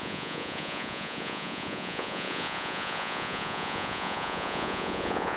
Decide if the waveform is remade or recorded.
remade